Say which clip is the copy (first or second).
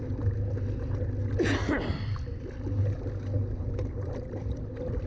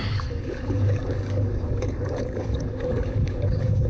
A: second